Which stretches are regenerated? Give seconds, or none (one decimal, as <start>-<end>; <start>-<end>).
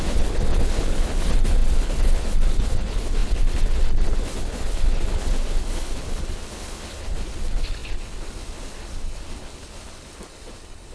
0.0-10.9